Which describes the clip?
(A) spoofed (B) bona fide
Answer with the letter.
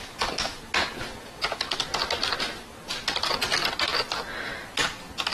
B